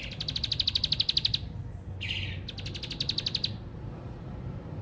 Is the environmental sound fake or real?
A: real